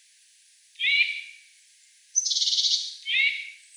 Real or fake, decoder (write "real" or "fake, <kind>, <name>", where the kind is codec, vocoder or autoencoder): fake, vocoder, BigVGAN v2